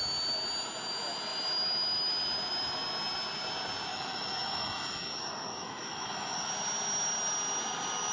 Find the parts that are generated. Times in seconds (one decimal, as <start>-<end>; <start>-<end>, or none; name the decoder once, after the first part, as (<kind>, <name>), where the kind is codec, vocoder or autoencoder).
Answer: 3.9-6.5 (autoencoder, DAC-VAE)